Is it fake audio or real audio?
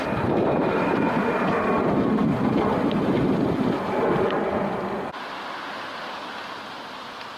real